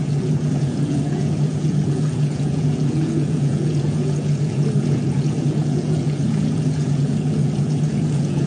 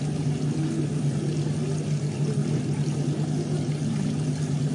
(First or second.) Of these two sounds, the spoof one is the first